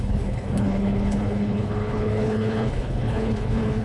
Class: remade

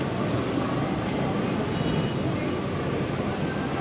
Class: recorded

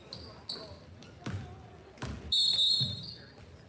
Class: recorded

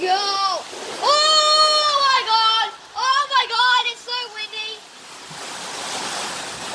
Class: recorded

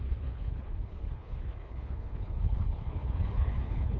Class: remade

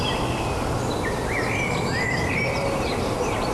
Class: recorded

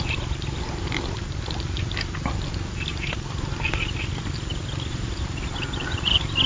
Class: recorded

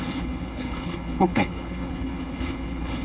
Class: remade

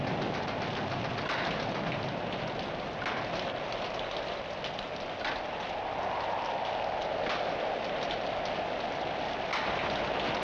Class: recorded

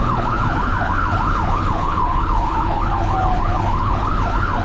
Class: remade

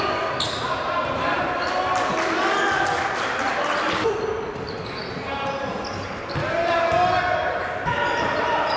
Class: recorded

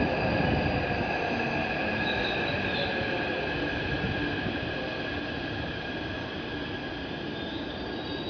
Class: recorded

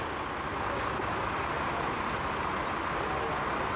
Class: recorded